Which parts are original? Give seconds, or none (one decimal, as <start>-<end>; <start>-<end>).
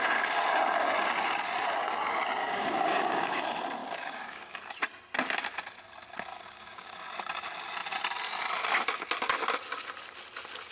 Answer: 0.0-2.4; 3.4-3.8; 4.6-6.3; 7.0-10.7